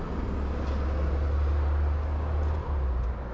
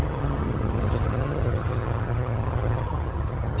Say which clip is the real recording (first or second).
first